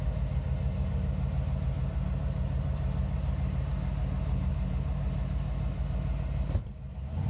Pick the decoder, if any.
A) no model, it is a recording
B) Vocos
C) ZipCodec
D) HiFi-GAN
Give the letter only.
A